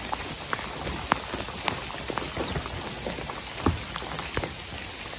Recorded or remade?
recorded